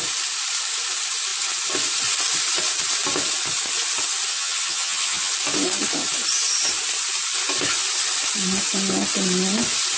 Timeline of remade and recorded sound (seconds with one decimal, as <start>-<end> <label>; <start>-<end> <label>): 0.0-4.3 recorded; 4.3-5.3 remade; 5.3-10.0 recorded